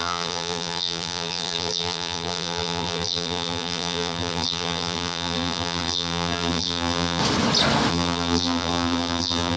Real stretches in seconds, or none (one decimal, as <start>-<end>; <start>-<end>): 7.2-7.9